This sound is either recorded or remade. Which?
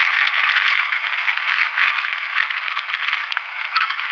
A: remade